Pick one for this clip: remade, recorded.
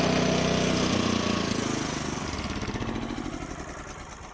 recorded